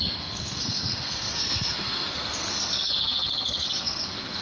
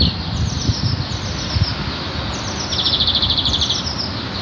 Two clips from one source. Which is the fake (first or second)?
first